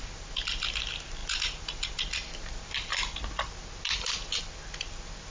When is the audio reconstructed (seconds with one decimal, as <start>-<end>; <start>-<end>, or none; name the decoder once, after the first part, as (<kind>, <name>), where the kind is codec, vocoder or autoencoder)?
none